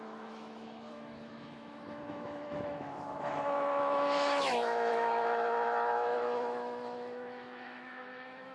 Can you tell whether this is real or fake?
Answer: fake